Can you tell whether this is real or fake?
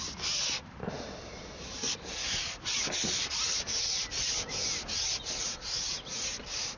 real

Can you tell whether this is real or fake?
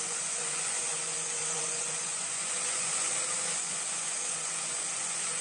fake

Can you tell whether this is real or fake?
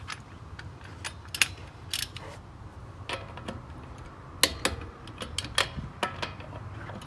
real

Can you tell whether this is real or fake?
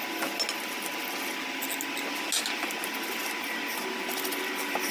real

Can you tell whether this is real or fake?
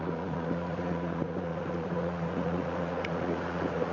fake